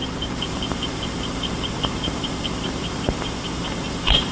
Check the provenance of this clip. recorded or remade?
remade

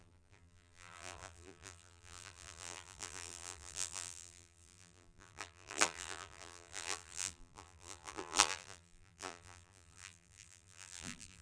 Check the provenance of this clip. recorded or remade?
remade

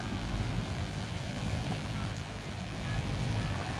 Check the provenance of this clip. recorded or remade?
remade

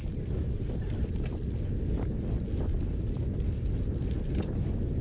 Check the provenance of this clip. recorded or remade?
recorded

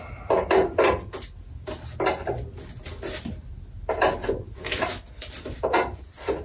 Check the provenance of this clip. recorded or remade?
recorded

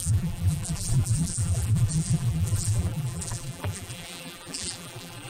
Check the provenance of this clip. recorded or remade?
remade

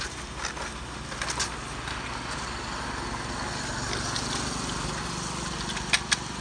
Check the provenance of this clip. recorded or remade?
recorded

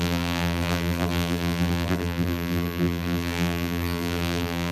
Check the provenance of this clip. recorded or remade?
remade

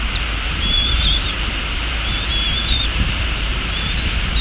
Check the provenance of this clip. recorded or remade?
remade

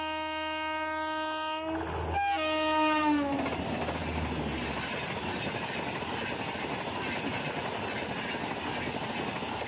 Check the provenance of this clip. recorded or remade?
recorded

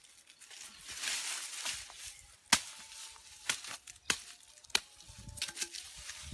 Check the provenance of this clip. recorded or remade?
recorded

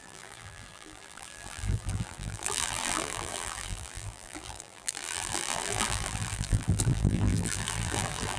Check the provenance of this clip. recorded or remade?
remade